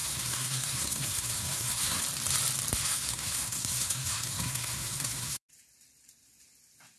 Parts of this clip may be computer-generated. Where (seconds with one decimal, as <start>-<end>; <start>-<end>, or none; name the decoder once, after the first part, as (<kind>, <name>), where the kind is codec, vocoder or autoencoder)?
0.0-2.0 (codec, SNAC); 2.8-5.5